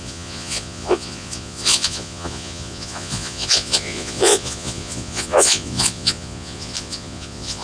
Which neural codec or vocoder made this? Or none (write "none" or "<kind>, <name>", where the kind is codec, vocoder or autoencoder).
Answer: vocoder, Vocos